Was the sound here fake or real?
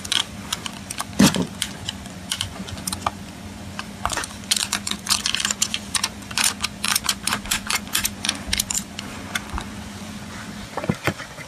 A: fake